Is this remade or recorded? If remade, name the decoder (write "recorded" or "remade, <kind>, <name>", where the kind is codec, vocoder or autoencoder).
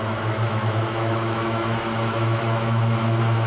remade, autoencoder, DAC-VAE